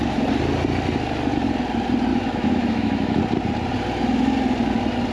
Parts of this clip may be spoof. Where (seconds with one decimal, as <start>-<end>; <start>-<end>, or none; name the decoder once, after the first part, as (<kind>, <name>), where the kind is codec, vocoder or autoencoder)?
2.1-3.2 (autoencoder, DAC-VAE)